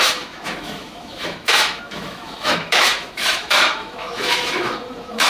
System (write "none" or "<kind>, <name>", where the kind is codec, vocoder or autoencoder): autoencoder, DAC-VAE